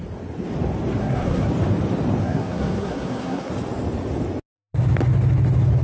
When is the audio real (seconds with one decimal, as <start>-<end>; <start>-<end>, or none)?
0.0-1.0; 1.5-2.2; 3.5-5.8